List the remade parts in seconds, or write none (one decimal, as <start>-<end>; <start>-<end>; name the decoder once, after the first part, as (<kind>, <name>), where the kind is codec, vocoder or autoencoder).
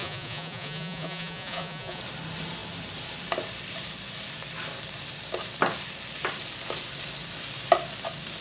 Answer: 0.0-2.0 (vocoder, Vocos)